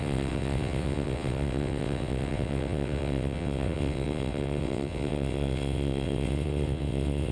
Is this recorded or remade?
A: remade